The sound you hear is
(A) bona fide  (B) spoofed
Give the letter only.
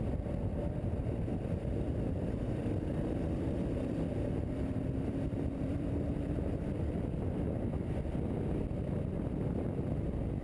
B